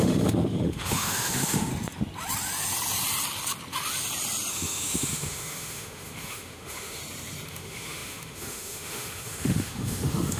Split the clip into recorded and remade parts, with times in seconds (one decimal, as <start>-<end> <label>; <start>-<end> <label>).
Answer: 0.0-1.7 remade; 1.7-4.5 recorded; 4.5-7.0 remade; 7.0-7.5 recorded; 7.5-10.4 remade